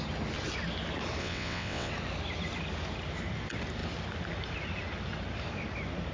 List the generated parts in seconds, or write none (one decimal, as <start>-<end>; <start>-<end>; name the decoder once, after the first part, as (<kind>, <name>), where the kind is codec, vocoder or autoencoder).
1.2-1.9 (vocoder, WaveNeXt)